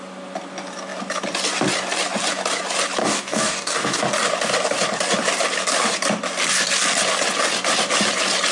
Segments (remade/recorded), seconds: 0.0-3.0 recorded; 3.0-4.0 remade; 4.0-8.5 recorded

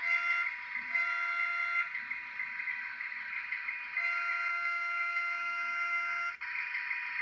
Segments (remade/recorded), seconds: 0.0-4.5 recorded; 4.5-6.3 remade; 6.3-7.2 recorded

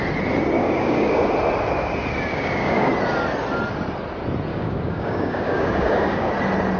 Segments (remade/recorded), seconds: 0.0-0.6 recorded; 0.6-1.3 remade; 1.3-2.3 recorded; 2.3-2.9 remade; 2.9-4.5 recorded; 4.5-6.3 remade; 6.3-6.8 recorded